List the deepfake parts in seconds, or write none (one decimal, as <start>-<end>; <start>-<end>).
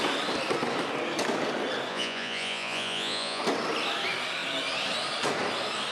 1.9-3.4